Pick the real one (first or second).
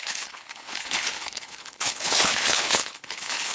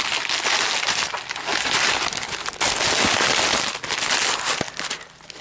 second